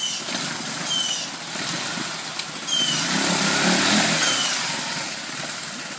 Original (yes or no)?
yes